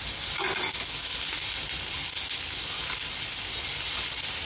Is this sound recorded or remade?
recorded